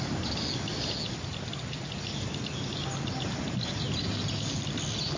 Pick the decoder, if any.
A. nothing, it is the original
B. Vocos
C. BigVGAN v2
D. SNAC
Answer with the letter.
A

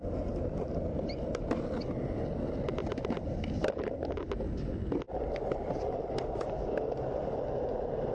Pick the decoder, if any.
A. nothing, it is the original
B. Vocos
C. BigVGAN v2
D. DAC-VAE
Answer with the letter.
A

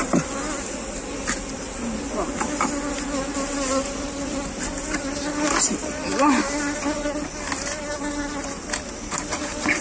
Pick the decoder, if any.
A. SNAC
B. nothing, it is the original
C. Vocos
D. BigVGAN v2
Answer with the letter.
B